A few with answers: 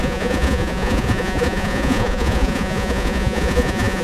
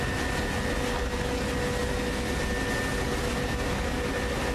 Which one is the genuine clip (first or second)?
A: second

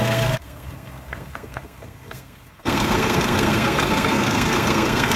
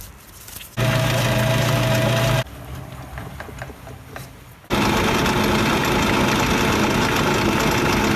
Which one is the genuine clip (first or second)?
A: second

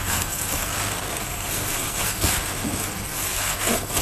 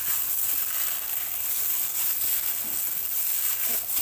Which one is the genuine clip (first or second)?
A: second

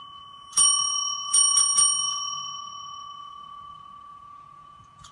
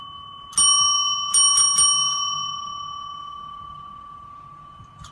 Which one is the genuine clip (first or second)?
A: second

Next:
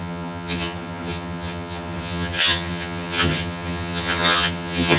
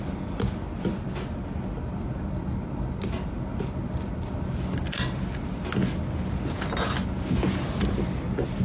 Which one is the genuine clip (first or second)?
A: second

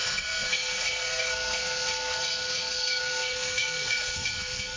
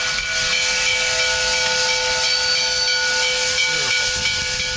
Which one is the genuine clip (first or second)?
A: second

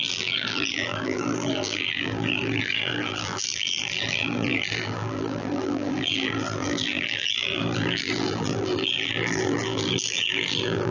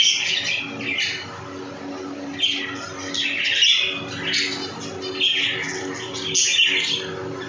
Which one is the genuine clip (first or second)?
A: second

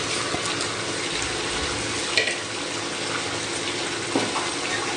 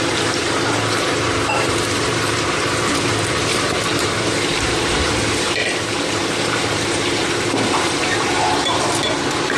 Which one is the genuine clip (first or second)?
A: first